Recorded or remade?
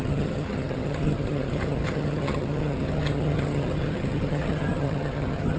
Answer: remade